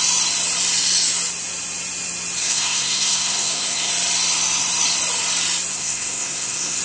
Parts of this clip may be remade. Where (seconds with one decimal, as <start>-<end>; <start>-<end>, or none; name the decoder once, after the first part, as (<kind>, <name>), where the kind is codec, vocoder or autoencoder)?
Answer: 2.4-3.9 (codec, SNAC); 5.7-6.8